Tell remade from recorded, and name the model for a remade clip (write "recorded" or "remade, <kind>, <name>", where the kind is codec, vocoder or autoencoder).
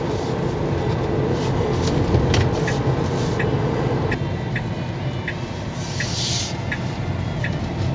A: recorded